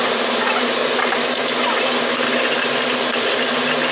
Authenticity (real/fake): real